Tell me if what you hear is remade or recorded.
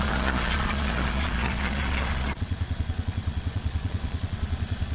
remade